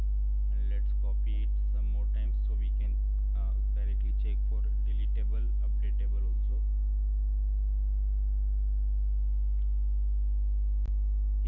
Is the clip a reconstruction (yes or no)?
no